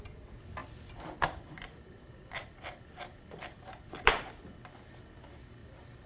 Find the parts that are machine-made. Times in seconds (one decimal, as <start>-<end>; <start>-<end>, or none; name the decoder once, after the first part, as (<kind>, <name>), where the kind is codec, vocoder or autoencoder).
0.6-4.3 (vocoder, BigVGAN v2); 5.6-6.1